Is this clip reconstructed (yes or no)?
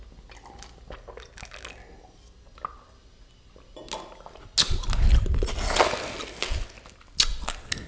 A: no